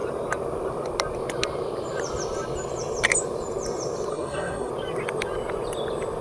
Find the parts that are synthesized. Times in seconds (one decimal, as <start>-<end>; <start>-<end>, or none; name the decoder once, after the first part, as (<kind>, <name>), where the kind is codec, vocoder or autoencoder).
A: 4.1-4.7 (codec, SNAC)